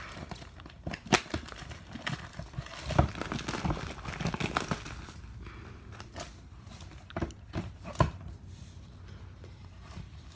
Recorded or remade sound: recorded